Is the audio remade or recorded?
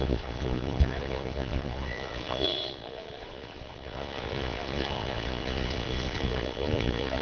remade